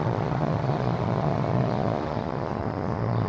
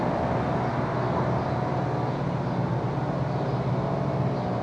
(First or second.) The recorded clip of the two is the second